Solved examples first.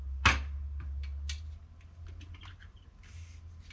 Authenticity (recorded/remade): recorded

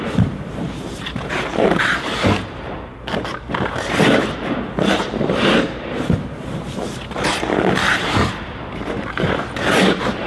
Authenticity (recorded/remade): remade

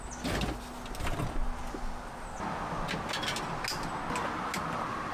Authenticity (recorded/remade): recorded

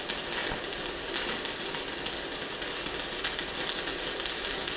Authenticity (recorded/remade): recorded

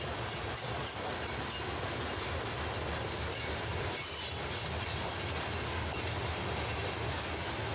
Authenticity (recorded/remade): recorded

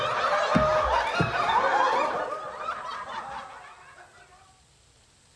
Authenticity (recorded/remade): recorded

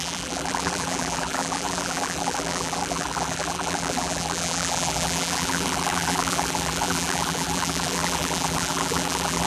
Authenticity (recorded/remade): remade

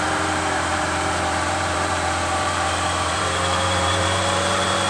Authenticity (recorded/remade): remade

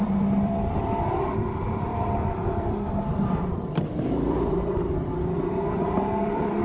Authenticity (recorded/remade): remade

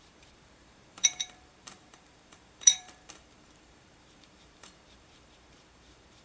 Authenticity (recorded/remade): remade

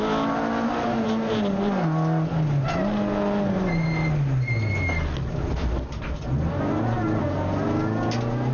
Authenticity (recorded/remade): recorded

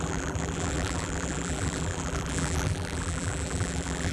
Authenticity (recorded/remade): remade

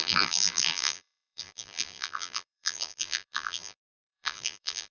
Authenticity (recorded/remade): remade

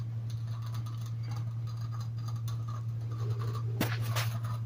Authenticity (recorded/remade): recorded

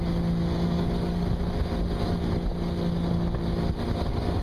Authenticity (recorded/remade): recorded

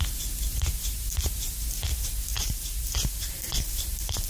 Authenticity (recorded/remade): remade